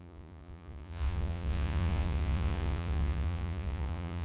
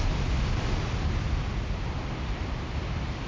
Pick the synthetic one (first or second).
first